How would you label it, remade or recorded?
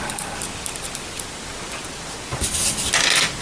recorded